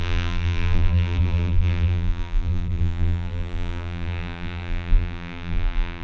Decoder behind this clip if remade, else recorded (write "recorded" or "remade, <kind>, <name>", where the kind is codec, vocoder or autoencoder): remade, vocoder, BigVGAN v2